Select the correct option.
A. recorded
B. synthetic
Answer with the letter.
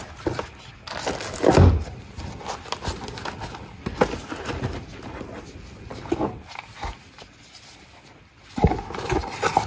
A